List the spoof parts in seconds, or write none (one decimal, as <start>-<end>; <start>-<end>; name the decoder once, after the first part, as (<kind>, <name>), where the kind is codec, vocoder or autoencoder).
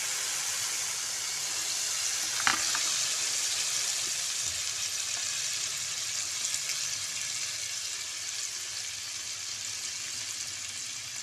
none